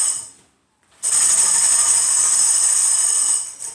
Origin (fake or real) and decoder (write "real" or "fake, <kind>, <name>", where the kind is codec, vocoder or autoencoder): real